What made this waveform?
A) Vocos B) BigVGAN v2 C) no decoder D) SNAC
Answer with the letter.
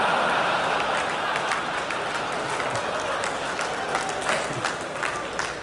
C